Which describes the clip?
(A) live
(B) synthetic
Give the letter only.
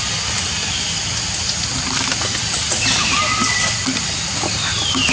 A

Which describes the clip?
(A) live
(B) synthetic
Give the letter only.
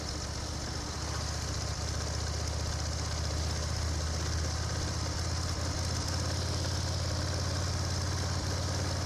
A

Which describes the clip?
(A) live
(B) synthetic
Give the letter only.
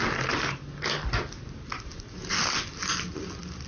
A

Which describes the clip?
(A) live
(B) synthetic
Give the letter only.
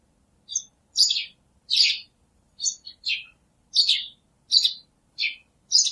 A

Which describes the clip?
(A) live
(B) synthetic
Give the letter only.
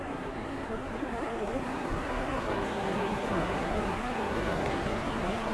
B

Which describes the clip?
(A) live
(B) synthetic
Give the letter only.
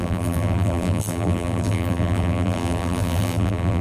B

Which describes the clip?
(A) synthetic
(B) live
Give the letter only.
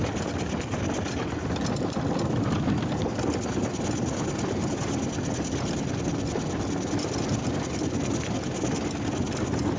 B